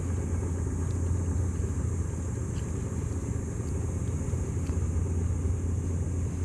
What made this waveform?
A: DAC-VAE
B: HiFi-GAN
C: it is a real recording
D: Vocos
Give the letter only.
C